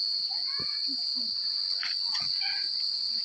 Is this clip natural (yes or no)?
yes